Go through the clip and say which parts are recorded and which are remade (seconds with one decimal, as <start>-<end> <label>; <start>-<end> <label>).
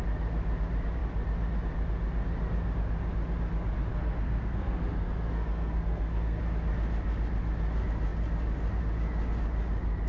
0.0-3.9 recorded; 3.9-6.4 remade; 6.4-10.1 recorded